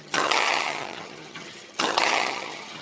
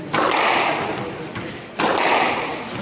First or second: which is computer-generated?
first